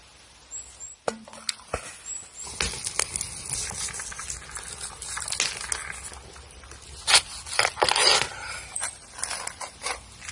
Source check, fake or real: real